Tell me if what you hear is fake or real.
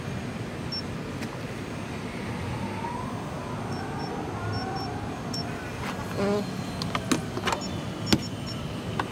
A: real